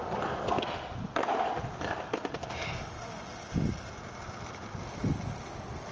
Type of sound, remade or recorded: recorded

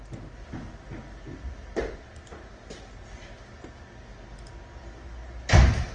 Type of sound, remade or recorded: recorded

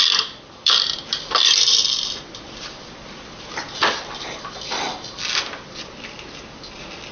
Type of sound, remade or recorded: remade